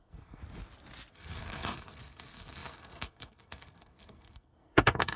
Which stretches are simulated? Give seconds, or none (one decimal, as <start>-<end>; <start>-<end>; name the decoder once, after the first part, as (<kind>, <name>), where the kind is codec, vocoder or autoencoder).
0.0-0.4 (codec, SNAC); 1.1-5.2